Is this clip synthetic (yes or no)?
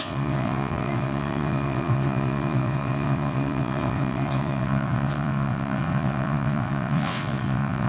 yes